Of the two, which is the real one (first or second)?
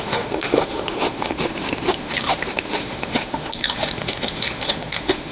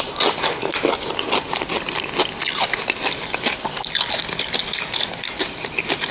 second